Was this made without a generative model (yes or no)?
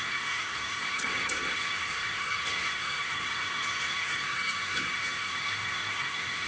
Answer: no